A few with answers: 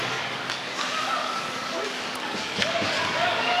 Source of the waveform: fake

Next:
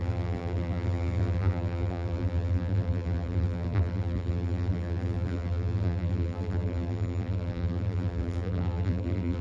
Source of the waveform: fake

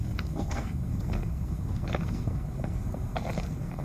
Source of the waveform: fake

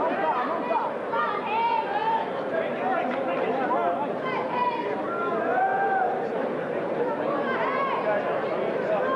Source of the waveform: real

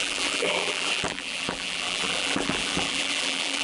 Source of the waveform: fake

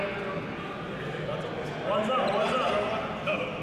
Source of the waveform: real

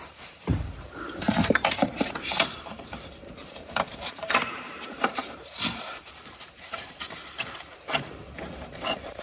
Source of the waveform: fake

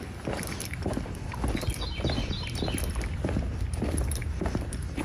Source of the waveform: fake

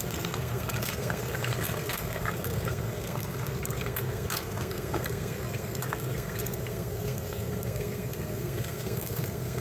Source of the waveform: fake